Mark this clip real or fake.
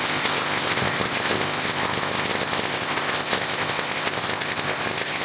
fake